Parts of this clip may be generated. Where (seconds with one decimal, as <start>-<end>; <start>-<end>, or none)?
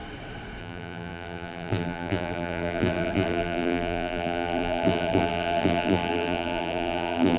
0.6-7.4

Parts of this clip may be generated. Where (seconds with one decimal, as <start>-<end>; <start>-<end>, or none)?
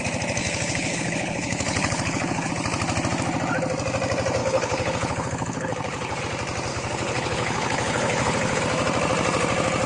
0.4-2.5; 4.4-6.2; 6.7-8.6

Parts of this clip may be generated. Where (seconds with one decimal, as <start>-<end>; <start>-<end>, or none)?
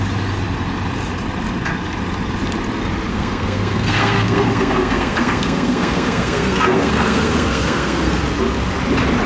3.1-8.2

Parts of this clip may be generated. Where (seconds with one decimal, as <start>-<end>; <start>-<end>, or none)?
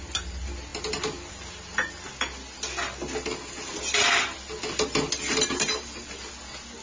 none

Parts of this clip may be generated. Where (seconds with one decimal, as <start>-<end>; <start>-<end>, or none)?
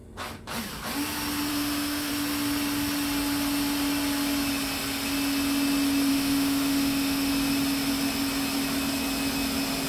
1.5-2.1; 6.1-7.3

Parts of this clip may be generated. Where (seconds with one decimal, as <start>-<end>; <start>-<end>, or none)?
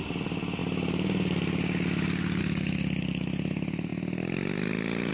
none